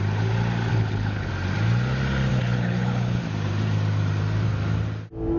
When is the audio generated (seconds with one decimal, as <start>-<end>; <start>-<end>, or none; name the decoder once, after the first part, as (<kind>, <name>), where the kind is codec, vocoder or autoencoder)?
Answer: 0.7-1.3 (codec, HILCodec); 2.3-3.2